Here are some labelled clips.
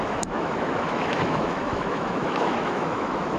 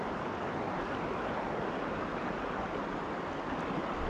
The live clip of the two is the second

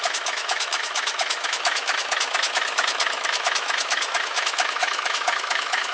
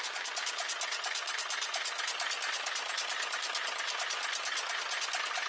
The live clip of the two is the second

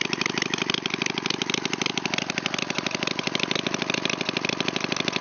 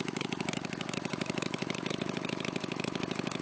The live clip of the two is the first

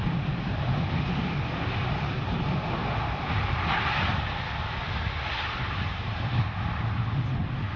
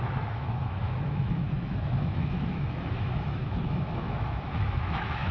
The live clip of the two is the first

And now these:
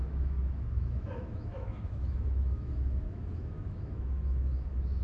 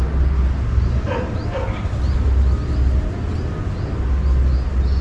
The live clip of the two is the second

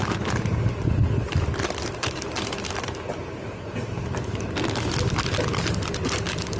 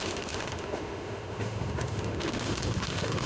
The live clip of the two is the first